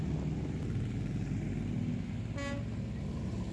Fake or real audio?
real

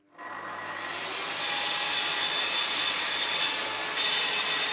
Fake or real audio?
real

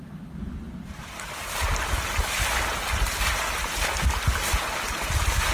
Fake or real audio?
real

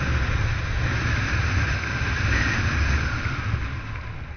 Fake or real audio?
real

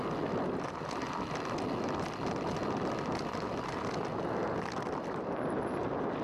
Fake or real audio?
real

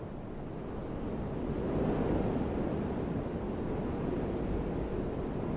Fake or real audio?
real